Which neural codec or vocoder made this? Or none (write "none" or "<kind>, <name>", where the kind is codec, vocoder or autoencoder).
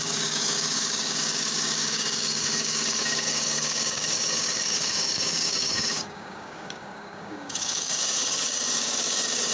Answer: codec, DAC